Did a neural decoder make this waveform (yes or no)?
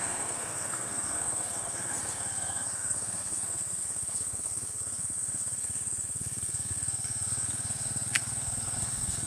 yes